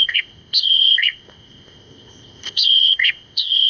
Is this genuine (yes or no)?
no